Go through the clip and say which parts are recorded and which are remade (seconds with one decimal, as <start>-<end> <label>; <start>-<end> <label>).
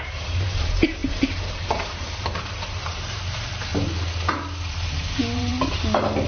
0.0-3.7 remade; 3.7-4.7 recorded; 4.7-5.5 remade; 5.5-6.3 recorded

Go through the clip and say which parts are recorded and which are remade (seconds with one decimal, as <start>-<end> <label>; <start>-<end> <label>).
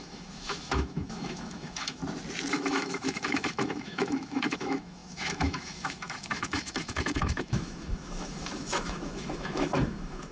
0.0-2.0 remade; 2.0-2.5 recorded; 2.5-10.3 remade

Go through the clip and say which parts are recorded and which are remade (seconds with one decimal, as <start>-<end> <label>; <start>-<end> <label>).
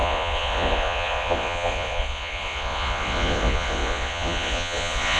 0.0-5.2 remade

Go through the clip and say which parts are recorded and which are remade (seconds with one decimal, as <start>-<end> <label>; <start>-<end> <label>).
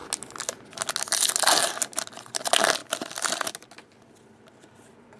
0.0-5.2 recorded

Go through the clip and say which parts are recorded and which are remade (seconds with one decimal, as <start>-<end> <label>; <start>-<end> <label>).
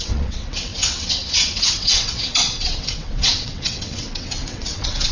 0.0-5.1 remade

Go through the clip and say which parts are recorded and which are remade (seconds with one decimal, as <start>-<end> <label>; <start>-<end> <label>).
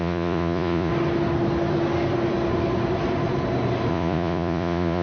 0.0-0.9 remade; 0.9-3.9 recorded; 3.9-5.0 remade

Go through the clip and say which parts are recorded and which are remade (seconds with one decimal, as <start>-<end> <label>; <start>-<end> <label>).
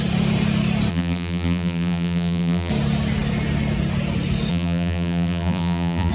0.0-0.9 recorded; 0.9-2.7 remade; 2.7-4.5 recorded; 4.5-6.1 remade